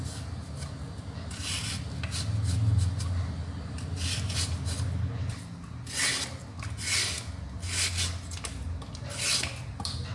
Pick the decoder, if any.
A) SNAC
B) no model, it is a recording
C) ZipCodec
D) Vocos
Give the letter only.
B